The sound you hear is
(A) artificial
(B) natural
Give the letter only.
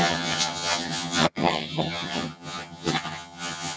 A